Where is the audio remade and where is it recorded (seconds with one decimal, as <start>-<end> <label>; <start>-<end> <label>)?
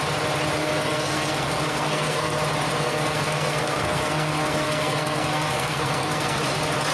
0.0-0.6 recorded; 0.6-2.4 remade; 2.4-2.8 recorded; 2.8-6.4 remade; 6.4-6.9 recorded